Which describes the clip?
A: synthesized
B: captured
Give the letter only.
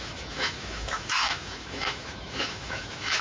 A